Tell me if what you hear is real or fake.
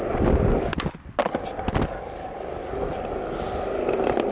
real